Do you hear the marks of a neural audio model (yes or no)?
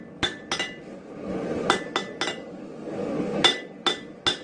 no